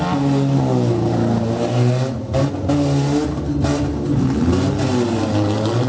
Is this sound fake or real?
real